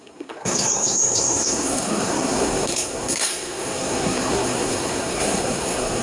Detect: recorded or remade remade